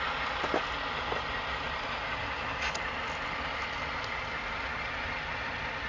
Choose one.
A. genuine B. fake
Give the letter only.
A